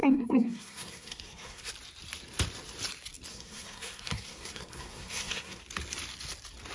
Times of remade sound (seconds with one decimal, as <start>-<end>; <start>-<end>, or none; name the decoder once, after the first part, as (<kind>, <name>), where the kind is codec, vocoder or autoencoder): 0.0-1.7 (codec, SNAC); 3.3-5.6